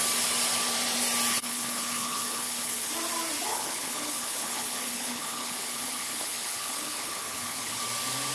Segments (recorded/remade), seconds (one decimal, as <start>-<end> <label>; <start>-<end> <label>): 0.0-1.3 recorded; 1.3-2.9 remade; 2.9-3.5 recorded; 3.5-7.8 remade; 7.8-8.3 recorded